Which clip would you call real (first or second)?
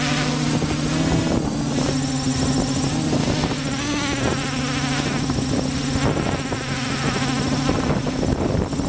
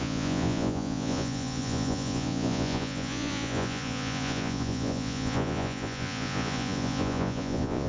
first